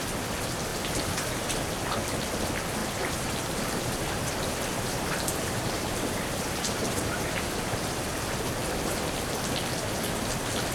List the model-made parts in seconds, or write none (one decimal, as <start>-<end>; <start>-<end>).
0.7-1.5; 2.8-4.3; 4.7-8.1